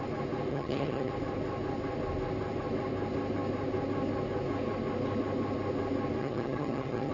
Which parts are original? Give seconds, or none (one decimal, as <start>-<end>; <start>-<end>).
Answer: 0.0-0.5; 1.1-6.2